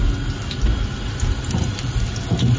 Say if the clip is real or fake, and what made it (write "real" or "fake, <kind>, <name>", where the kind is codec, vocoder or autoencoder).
real